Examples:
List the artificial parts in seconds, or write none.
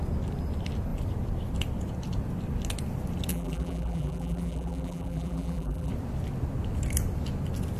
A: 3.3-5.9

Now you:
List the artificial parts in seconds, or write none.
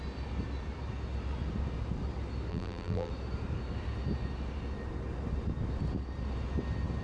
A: 2.5-3.1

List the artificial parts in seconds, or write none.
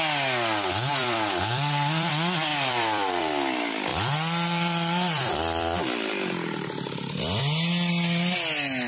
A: 1.0-2.1; 2.5-3.2; 3.9-7.4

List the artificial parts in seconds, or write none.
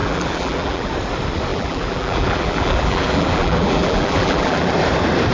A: 0.0-0.9; 1.5-4.7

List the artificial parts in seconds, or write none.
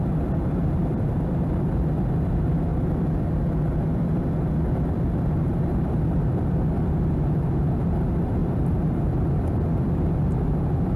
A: 0.6-1.8; 8.4-9.0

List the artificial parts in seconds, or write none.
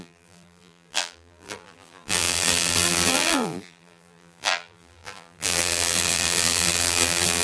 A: 0.0-7.4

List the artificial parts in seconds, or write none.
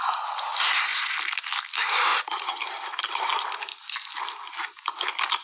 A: 2.1-3.0